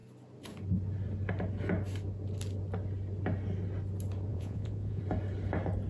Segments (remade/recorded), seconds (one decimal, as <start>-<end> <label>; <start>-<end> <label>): 0.0-4.3 recorded; 4.3-5.0 remade; 5.0-5.9 recorded